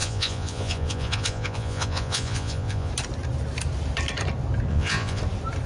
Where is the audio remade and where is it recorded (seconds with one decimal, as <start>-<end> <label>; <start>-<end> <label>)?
0.0-2.9 remade; 2.9-4.7 recorded; 4.7-5.2 remade; 5.2-5.7 recorded